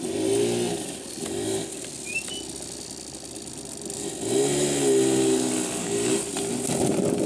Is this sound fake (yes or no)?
no